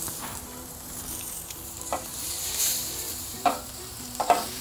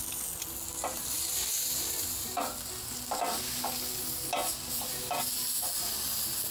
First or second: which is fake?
first